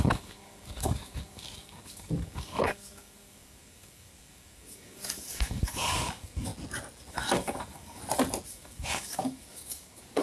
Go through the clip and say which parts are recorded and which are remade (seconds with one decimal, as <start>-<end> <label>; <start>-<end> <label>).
0.0-6.5 remade; 6.5-7.1 recorded; 7.1-8.0 remade; 8.0-8.5 recorded; 8.5-10.2 remade